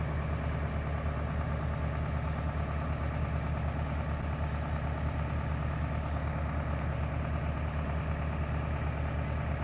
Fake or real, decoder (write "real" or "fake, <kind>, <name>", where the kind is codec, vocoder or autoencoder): real